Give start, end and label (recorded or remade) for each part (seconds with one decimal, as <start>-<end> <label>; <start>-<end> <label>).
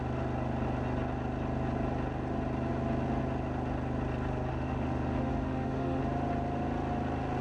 0.0-4.5 recorded; 4.5-6.0 remade; 6.0-7.4 recorded